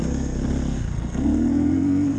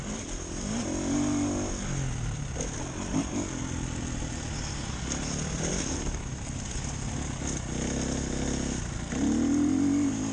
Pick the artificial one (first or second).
first